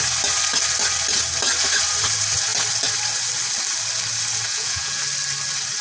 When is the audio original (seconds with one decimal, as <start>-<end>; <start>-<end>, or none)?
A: 0.0-4.5; 5.0-5.8